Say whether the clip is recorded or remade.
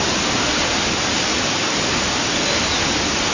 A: recorded